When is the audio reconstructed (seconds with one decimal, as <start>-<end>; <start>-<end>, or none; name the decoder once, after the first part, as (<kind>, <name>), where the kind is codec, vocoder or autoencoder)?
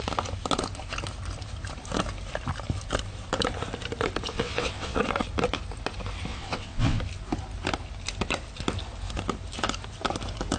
4.3-5.0 (vocoder, WaveNeXt); 6.3-7.0